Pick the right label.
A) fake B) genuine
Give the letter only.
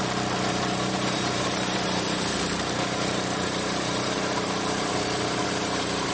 A